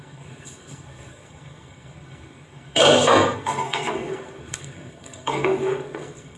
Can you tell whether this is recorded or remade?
remade